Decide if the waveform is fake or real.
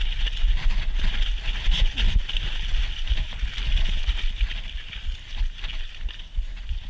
real